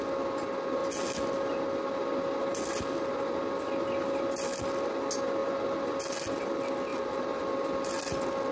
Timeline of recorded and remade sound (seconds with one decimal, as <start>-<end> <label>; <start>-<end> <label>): 0.0-6.9 recorded; 6.9-7.4 remade; 7.4-8.5 recorded